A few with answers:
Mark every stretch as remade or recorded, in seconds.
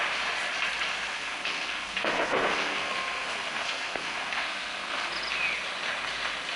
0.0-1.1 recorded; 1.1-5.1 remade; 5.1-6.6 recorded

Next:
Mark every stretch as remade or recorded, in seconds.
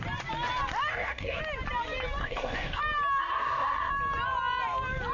0.0-0.9 recorded; 0.9-1.4 remade; 1.4-2.2 recorded; 2.2-2.8 remade; 2.8-3.2 recorded; 3.2-3.9 remade; 3.9-5.1 recorded